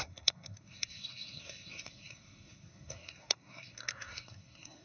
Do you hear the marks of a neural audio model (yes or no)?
yes